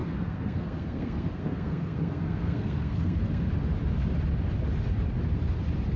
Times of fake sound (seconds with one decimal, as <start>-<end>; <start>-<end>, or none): 0.0-3.5